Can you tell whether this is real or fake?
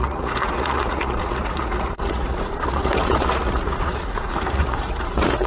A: fake